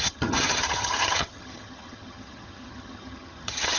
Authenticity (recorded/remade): remade